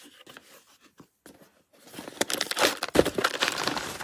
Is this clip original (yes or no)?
yes